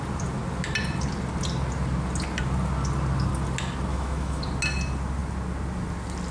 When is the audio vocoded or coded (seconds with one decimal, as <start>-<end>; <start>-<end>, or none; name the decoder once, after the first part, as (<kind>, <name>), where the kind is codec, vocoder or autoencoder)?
3.9-4.4 (autoencoder, DAC-VAE)